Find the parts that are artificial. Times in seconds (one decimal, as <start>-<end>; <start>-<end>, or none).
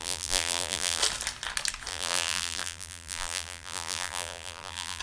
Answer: 0.0-1.0; 1.9-5.0